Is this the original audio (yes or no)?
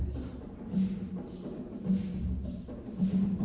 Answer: yes